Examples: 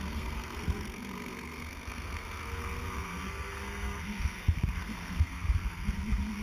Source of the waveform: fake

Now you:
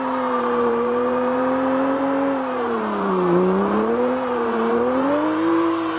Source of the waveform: fake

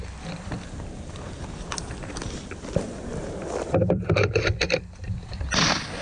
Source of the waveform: fake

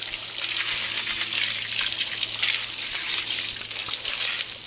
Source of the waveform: real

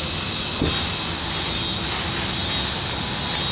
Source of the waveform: real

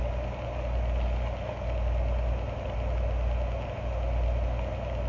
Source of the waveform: real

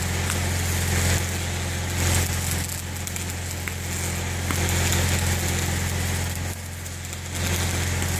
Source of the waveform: real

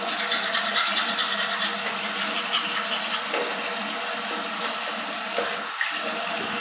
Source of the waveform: real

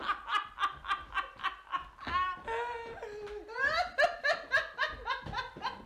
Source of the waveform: real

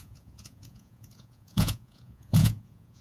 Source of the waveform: fake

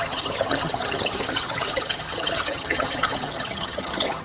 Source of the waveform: fake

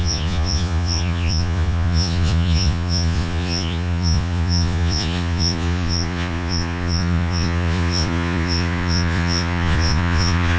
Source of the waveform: fake